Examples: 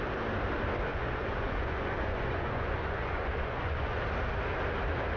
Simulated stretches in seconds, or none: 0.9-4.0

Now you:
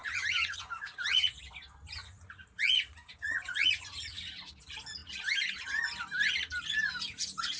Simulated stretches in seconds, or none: 0.0-1.4; 2.0-4.5